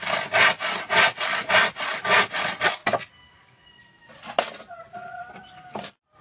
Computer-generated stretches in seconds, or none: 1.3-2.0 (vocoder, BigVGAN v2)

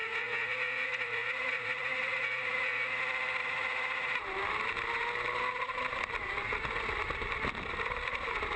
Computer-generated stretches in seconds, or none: 0.0-3.0 (vocoder, Vocos); 3.4-4.2

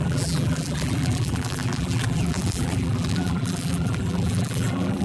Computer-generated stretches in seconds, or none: 0.0-5.0 (vocoder, BigVGAN v2)

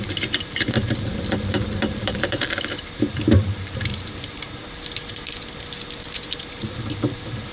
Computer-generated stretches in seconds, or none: 0.0-4.6 (vocoder, BigVGAN v2); 6.5-7.5

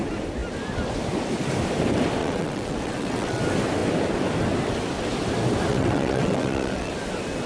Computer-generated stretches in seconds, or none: 2.2-3.4 (vocoder, WaveNeXt); 5.7-6.9